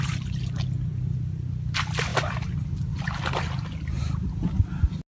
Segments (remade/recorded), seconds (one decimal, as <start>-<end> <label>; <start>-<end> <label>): 0.0-5.1 recorded